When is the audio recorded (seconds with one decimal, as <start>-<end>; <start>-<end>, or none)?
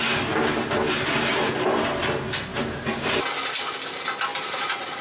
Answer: 0.0-1.3; 2.0-2.5; 3.2-4.3